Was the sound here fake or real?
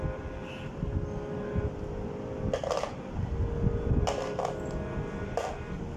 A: real